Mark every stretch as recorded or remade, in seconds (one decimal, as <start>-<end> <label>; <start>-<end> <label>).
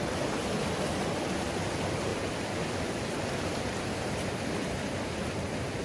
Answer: 0.0-2.1 recorded; 2.1-5.1 remade; 5.1-5.8 recorded